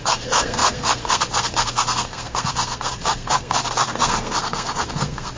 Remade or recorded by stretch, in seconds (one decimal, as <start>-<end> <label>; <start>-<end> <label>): 0.0-5.4 remade